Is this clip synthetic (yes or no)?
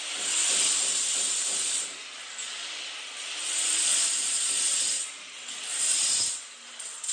no